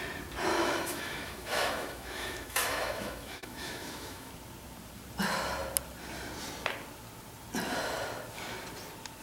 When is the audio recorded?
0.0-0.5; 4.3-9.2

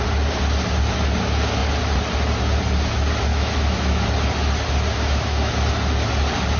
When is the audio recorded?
0.0-3.3; 4.0-4.9; 5.5-6.6

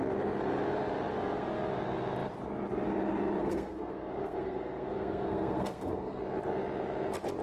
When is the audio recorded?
0.0-1.1; 1.7-3.4; 6.2-7.4

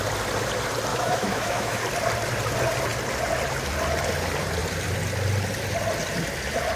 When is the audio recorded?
0.0-0.9; 1.8-6.8

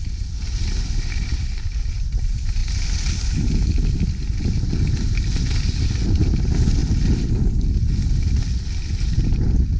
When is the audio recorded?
0.0-9.8